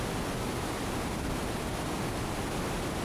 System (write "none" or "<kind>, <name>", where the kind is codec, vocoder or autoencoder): none